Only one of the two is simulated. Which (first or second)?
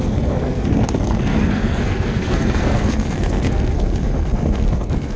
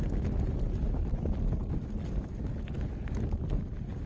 first